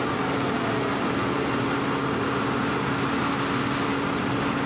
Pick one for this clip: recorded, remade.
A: recorded